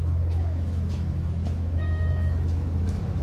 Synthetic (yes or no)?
yes